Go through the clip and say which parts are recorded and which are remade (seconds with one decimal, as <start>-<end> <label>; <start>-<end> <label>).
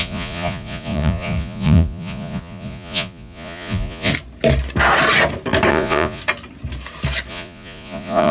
0.0-4.1 remade; 4.1-5.7 recorded; 5.7-6.2 remade; 6.2-7.3 recorded; 7.3-8.3 remade